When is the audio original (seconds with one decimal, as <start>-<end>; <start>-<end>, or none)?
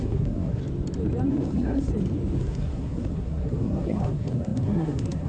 0.6-1.3; 1.9-2.4